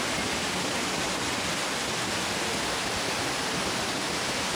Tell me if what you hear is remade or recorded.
recorded